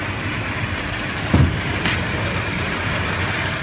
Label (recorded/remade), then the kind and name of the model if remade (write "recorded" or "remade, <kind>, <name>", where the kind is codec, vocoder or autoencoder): remade, vocoder, BigVGAN v2